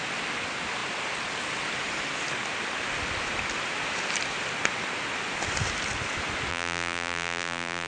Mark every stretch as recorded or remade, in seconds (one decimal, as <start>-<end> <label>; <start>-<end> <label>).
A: 0.0-6.5 recorded; 6.5-7.9 remade